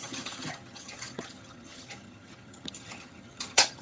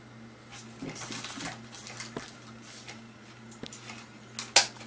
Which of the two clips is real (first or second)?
second